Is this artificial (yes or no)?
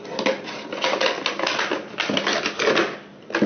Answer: no